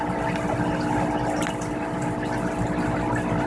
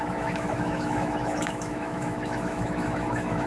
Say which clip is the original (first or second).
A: first